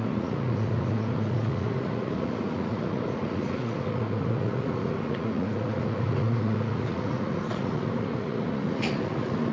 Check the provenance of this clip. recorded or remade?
remade